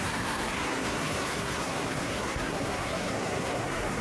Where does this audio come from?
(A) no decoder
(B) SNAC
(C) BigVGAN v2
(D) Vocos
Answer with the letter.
B